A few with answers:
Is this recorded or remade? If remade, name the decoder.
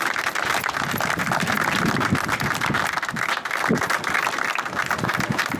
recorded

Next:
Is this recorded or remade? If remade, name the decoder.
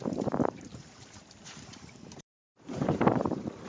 remade, vocoder, BigVGAN v2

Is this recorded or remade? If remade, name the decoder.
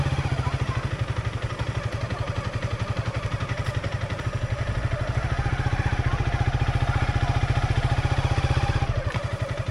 recorded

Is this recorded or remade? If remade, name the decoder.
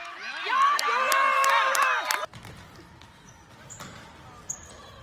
recorded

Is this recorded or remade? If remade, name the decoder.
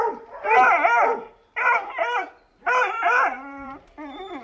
remade, vocoder, BigVGAN v2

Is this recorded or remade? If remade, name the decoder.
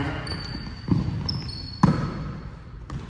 recorded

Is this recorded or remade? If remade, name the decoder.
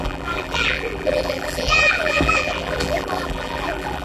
remade, vocoder, BigVGAN v2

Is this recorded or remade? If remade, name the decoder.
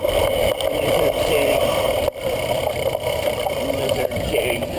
remade, vocoder, BigVGAN v2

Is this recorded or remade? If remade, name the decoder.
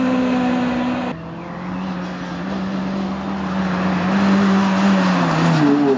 recorded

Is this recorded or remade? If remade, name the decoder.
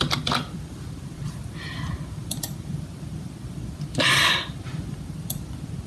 remade, vocoder, BigVGAN v2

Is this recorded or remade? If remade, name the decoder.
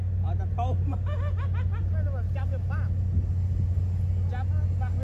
recorded